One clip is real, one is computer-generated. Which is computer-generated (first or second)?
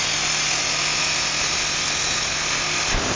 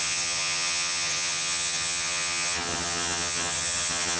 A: second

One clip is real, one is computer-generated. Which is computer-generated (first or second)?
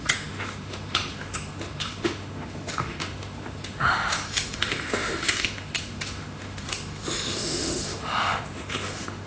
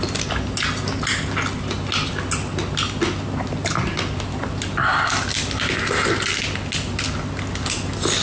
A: first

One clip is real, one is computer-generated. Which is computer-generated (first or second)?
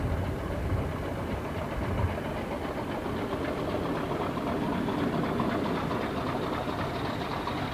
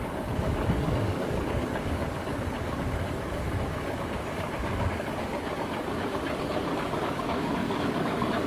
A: second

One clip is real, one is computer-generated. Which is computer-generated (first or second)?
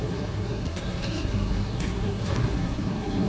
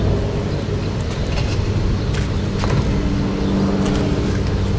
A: first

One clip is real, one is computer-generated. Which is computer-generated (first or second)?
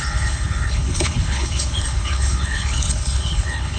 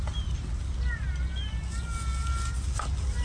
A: first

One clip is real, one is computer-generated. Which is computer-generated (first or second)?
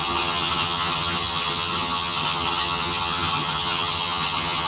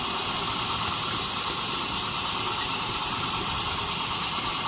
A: first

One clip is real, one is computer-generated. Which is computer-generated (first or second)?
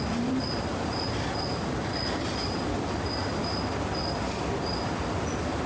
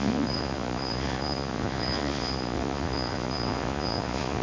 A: second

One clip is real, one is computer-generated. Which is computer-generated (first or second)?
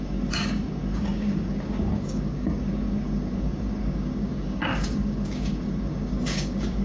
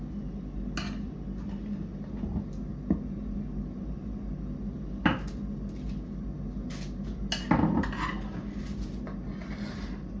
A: first